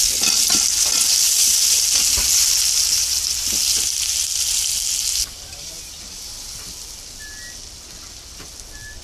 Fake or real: real